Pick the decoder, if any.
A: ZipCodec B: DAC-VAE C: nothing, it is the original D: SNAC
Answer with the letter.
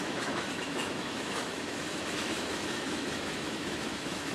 B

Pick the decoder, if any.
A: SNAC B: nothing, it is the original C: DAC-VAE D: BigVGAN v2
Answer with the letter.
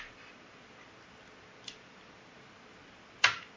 B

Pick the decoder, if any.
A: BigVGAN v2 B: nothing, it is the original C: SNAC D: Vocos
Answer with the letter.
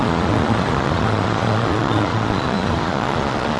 D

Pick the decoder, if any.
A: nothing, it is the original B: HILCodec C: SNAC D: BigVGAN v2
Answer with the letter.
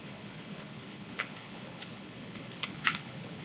B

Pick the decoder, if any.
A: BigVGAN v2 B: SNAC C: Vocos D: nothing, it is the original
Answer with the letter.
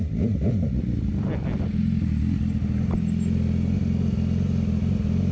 D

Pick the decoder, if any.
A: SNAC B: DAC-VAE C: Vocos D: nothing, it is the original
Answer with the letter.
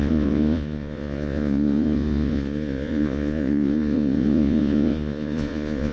C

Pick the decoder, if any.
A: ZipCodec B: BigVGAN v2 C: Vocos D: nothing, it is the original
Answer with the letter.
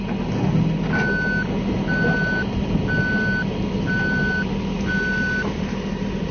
D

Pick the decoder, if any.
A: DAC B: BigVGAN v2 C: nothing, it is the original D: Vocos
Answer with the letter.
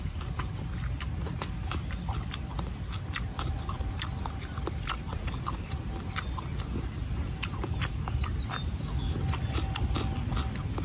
C